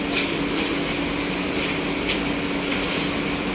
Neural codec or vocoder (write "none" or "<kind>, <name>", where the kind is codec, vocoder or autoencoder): none